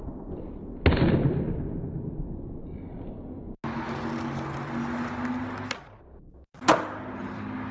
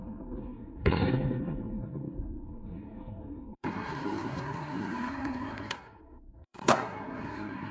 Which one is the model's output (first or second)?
second